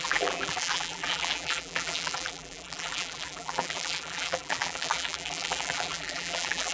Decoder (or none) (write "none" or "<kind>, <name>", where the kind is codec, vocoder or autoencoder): vocoder, BigVGAN v2